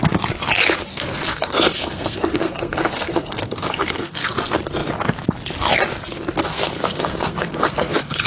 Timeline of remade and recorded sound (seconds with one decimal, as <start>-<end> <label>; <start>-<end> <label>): 0.0-0.9 recorded; 0.9-4.3 remade; 4.3-6.5 recorded; 6.5-8.3 remade